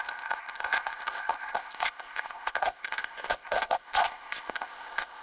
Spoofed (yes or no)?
yes